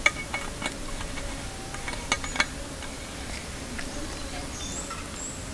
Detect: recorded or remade recorded